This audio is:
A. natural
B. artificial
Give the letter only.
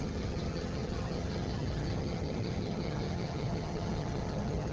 B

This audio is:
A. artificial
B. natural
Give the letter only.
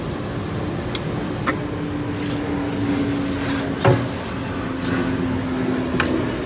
B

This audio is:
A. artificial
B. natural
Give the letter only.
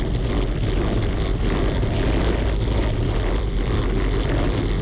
B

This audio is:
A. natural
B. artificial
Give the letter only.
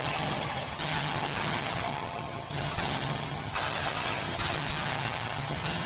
B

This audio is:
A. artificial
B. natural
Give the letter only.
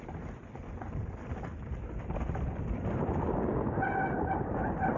B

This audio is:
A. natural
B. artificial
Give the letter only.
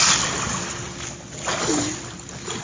A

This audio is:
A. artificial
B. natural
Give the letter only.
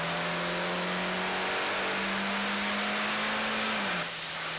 B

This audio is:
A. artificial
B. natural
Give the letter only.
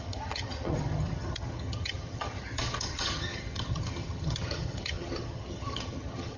A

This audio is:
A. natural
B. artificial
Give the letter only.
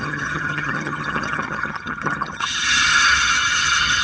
B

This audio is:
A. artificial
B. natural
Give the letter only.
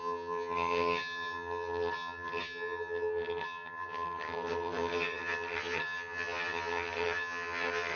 A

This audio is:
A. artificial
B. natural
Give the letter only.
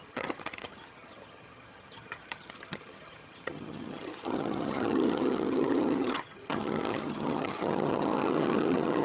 A